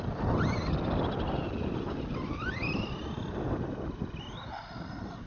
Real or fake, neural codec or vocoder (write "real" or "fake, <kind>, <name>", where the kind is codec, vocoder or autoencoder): real